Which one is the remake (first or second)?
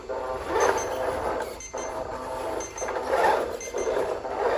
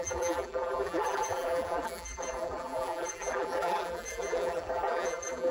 second